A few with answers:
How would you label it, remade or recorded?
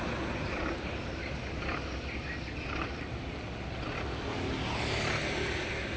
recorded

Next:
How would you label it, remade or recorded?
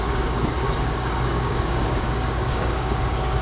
remade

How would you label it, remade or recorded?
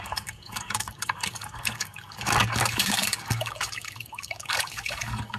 remade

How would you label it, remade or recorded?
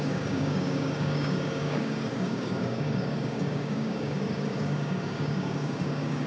remade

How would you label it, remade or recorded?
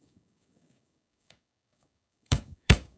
remade